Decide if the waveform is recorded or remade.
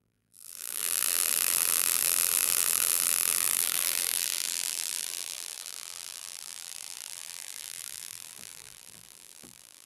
remade